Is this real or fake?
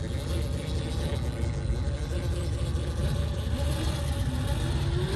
real